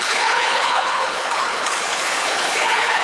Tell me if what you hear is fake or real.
fake